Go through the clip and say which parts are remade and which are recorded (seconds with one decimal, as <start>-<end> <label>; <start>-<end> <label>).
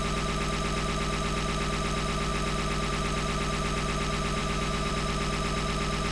0.0-4.4 recorded; 4.4-4.9 remade; 4.9-6.1 recorded